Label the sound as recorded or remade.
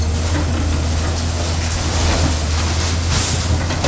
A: recorded